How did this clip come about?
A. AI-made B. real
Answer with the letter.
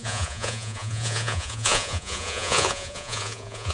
A